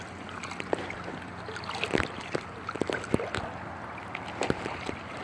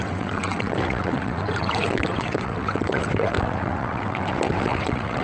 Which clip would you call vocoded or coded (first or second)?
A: second